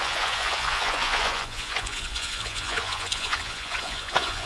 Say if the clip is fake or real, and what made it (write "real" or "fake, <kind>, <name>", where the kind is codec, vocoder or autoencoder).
fake, vocoder, Vocos